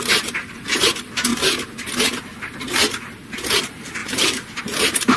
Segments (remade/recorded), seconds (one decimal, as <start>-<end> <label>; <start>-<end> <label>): 0.0-1.3 remade; 1.3-3.6 recorded; 3.6-5.2 remade

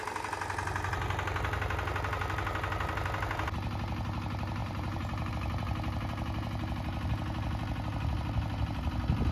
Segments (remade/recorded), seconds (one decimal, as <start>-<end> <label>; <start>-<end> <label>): 0.0-4.6 recorded; 4.6-5.3 remade; 5.3-9.3 recorded

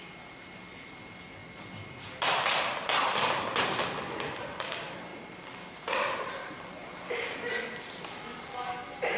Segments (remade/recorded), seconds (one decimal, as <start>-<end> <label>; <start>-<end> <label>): 0.0-9.2 recorded